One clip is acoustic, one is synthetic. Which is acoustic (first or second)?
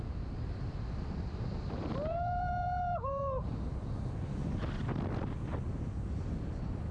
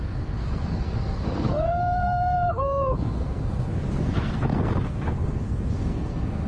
first